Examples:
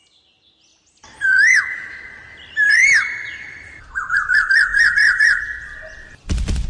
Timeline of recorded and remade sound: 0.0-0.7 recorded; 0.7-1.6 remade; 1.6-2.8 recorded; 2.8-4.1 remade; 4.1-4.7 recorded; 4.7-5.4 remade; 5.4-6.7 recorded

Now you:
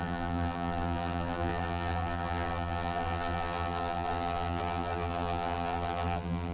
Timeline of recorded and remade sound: 0.0-6.5 remade

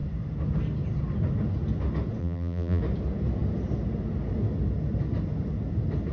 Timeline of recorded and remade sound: 0.0-2.2 recorded; 2.2-2.8 remade; 2.8-6.1 recorded

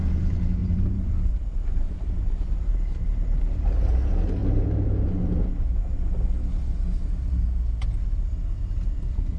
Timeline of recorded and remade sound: 0.0-0.6 recorded; 0.6-2.2 remade; 2.2-9.4 recorded

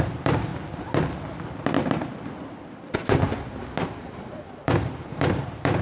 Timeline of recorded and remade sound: 0.0-0.5 remade; 0.5-4.0 recorded; 4.0-5.8 remade

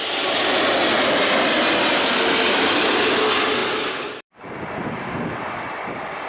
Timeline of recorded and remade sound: 0.0-3.6 recorded; 3.6-4.4 remade; 4.4-6.3 recorded

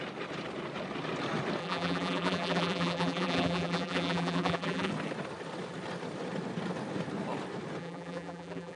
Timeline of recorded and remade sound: 0.0-1.6 recorded; 1.6-4.9 remade; 4.9-7.8 recorded; 7.8-8.8 remade

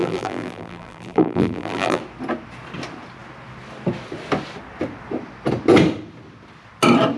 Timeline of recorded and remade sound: 0.0-2.0 remade; 2.0-7.2 recorded